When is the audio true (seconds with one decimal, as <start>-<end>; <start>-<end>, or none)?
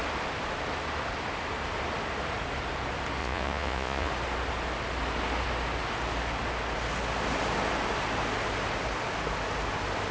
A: 0.0-3.2; 4.1-10.1